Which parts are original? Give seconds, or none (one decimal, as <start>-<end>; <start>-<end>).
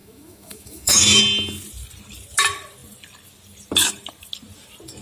1.2-5.0